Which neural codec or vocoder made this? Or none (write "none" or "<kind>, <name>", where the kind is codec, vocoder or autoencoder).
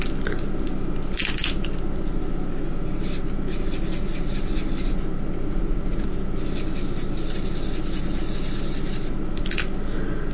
none